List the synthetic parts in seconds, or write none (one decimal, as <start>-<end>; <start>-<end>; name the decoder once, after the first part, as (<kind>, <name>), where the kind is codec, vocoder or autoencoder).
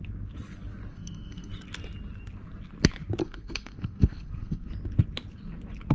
0.9-1.5 (codec, SNAC); 3.2-4.7